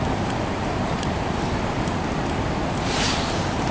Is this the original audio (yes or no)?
yes